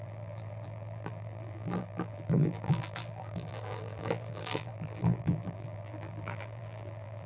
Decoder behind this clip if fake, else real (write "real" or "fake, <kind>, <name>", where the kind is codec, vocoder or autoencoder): fake, vocoder, BigVGAN v2